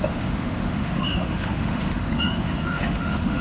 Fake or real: fake